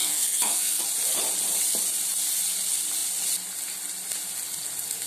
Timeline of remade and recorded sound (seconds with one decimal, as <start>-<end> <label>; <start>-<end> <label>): 0.0-0.8 remade; 0.8-5.1 recorded